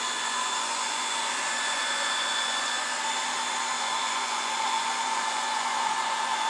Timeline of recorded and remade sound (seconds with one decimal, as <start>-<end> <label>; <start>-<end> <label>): 0.0-2.9 remade; 2.9-3.8 recorded; 3.8-6.5 remade